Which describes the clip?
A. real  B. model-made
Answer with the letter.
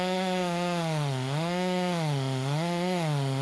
B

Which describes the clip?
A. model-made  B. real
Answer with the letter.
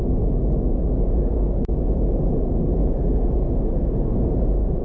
B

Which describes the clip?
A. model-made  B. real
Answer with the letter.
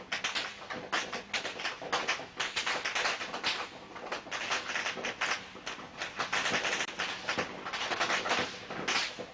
B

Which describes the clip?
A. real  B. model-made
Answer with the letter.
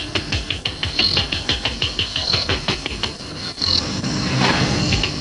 B